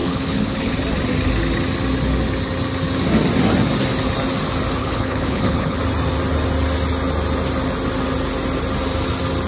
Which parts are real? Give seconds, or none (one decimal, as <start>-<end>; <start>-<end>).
0.7-4.8; 5.8-9.5